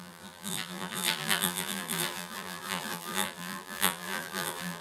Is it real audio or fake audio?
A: fake